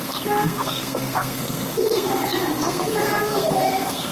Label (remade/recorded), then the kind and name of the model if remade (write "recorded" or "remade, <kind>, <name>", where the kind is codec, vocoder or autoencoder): remade, codec, SNAC